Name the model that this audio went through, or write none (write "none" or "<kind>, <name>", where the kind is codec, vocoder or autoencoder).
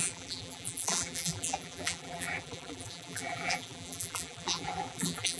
vocoder, BigVGAN v2